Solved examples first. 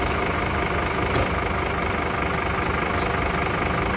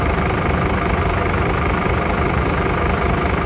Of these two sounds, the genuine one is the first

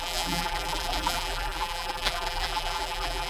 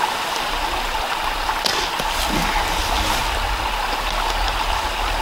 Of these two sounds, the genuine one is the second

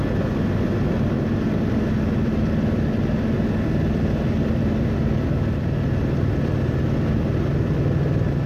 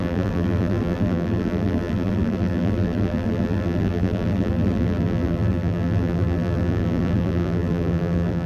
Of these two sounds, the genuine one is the first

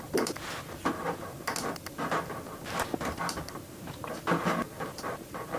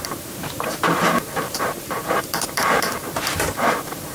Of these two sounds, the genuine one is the first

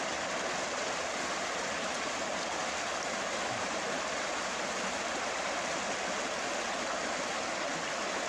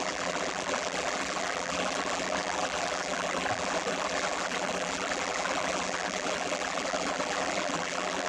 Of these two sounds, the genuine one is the first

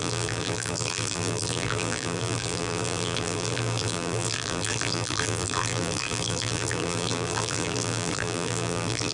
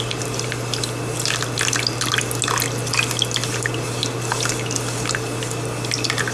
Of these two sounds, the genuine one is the second